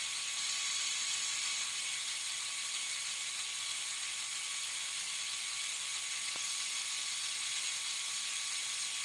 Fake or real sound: real